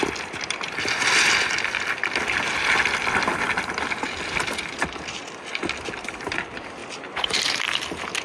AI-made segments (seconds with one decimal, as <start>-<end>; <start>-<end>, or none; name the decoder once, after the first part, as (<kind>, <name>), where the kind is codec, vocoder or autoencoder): none